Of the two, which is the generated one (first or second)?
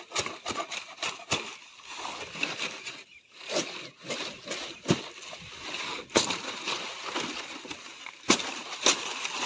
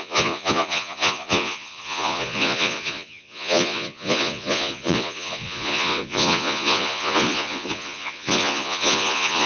second